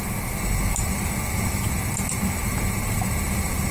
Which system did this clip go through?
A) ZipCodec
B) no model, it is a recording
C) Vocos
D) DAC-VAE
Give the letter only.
B